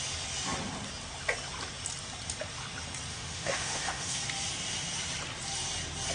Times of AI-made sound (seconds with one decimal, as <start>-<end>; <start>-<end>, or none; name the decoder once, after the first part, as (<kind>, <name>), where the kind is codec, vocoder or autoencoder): 3.1-4.2 (autoencoder, DAC-VAE)